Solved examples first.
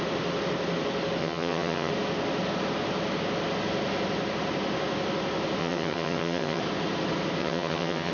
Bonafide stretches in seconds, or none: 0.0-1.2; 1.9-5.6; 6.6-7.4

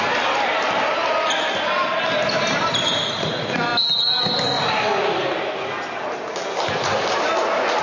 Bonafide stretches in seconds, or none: 0.0-7.8

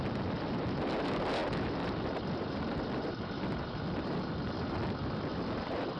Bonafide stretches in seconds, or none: 0.0-6.0

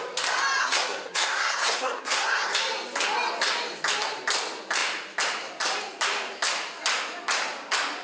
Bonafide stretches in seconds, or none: 0.0-0.6; 2.5-8.0

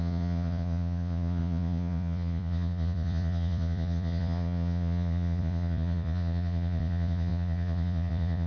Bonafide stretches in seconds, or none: none